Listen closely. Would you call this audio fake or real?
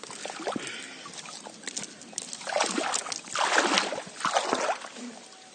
real